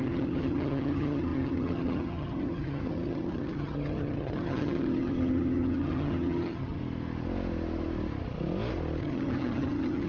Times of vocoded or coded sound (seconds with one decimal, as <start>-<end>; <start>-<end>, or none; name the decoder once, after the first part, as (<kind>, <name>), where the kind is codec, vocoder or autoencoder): 0.0-6.8 (vocoder, HiFi-GAN); 9.0-10.1